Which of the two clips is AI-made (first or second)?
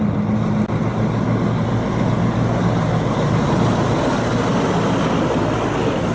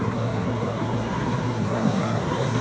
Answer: second